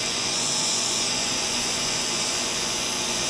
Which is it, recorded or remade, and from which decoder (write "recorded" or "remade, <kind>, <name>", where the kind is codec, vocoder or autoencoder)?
remade, vocoder, Vocos